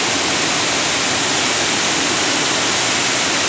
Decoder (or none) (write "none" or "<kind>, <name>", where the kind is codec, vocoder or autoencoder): none